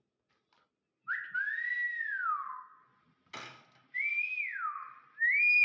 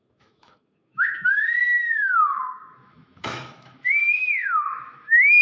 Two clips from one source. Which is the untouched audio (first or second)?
first